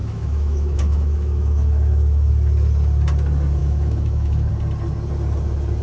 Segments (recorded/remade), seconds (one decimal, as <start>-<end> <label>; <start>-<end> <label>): 0.0-2.3 remade; 2.3-3.6 recorded; 3.6-4.5 remade; 4.5-5.8 recorded